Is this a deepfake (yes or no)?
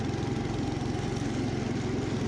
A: no